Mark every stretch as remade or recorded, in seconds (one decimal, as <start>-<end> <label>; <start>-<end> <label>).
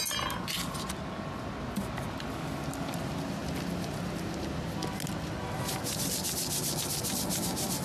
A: 0.0-7.8 recorded